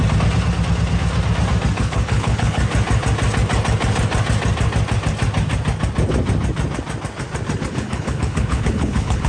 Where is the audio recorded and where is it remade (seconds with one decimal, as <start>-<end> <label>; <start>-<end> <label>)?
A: 0.0-1.8 recorded; 1.8-2.6 remade; 2.6-7.7 recorded; 7.7-9.3 remade